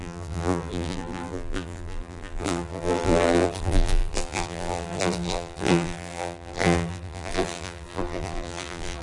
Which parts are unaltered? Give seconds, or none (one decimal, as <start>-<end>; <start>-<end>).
none